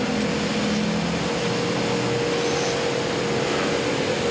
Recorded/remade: recorded